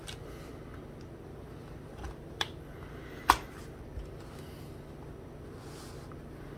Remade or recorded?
recorded